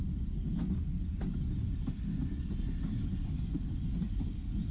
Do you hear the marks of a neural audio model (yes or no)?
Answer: no